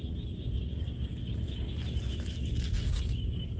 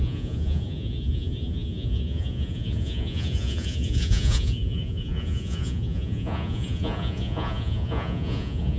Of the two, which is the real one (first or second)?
first